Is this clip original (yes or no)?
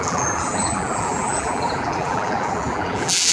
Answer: no